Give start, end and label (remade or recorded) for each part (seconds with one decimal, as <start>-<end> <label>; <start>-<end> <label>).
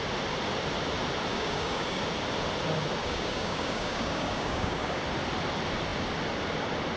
0.0-1.3 recorded; 1.3-2.0 remade; 2.0-3.0 recorded; 3.0-5.0 remade; 5.0-7.0 recorded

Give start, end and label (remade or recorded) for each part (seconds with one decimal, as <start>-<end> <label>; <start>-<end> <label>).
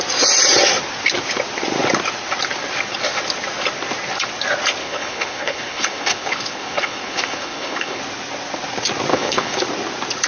0.0-4.8 recorded; 4.8-8.0 remade; 8.0-9.1 recorded; 9.1-9.6 remade; 9.6-10.3 recorded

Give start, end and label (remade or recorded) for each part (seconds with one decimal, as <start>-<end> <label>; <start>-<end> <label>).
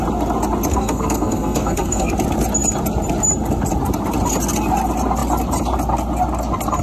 0.0-0.7 recorded; 0.7-2.1 remade; 2.1-6.8 recorded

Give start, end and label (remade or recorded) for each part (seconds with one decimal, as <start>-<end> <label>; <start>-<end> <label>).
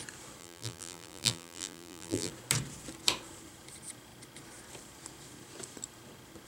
0.0-0.4 recorded; 0.4-2.3 remade; 2.3-6.5 recorded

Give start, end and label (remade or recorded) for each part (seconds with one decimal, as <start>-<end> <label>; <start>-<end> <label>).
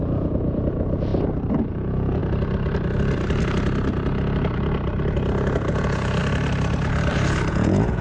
0.0-1.1 remade; 1.1-1.7 recorded; 1.7-2.2 remade; 2.2-5.7 recorded; 5.7-6.2 remade; 6.2-7.5 recorded; 7.5-8.0 remade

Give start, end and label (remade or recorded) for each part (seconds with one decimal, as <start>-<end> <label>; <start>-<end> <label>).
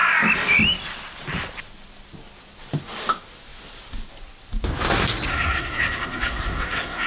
0.0-5.3 recorded; 5.3-7.1 remade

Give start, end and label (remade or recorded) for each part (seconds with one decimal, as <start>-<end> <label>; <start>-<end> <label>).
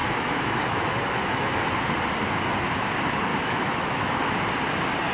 0.0-1.6 remade; 1.6-3.3 recorded; 3.3-4.4 remade; 4.4-5.1 recorded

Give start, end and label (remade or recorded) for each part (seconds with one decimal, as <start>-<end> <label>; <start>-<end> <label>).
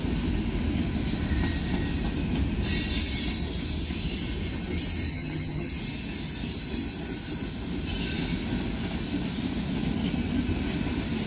0.0-5.1 recorded; 5.1-5.7 remade; 5.7-11.3 recorded